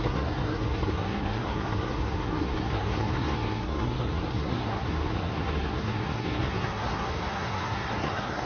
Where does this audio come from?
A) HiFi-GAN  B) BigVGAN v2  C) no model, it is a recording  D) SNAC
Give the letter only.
D